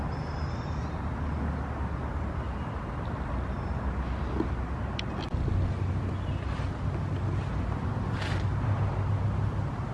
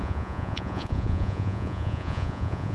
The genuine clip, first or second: first